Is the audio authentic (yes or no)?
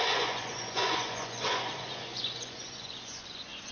no